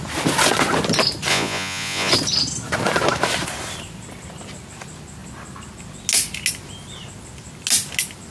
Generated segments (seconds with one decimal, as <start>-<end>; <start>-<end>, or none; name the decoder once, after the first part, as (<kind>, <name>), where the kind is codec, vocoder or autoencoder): 1.3-2.1 (vocoder, Vocos)